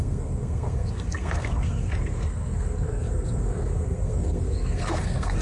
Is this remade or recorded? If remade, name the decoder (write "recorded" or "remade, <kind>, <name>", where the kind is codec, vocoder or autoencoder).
remade, codec, SNAC